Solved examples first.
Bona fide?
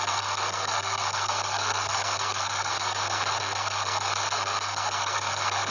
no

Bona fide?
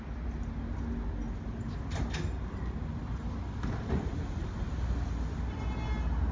yes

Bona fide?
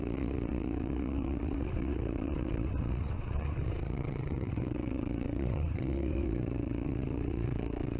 no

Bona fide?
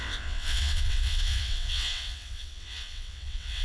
no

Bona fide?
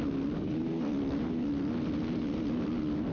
yes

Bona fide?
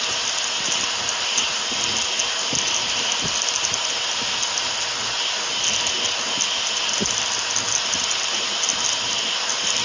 yes